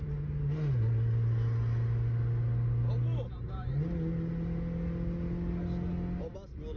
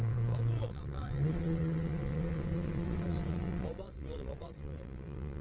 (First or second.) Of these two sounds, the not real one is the second